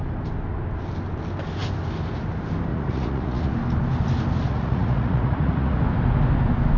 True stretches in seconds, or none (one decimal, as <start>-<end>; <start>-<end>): 0.0-2.7; 3.5-4.5; 5.8-6.8